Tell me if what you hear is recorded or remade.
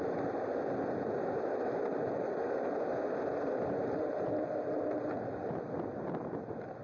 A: recorded